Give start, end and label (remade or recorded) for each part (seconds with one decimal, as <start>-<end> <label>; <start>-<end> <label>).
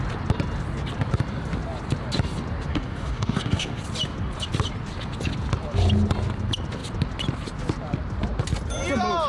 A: 0.0-2.7 recorded; 2.7-3.8 remade; 3.8-9.3 recorded